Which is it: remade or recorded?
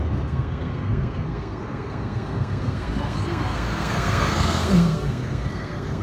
remade